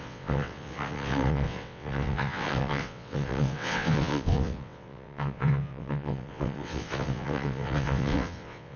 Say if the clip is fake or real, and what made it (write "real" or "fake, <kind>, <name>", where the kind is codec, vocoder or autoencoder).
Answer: fake, vocoder, WaveNeXt